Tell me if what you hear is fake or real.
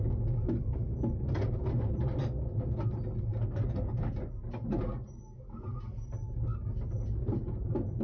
real